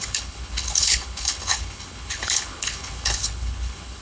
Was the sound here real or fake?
fake